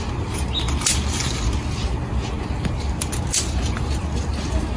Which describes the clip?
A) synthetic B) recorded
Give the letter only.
B